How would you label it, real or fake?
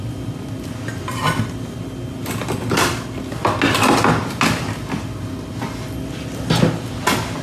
real